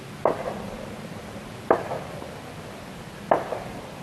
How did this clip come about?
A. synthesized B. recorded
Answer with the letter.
B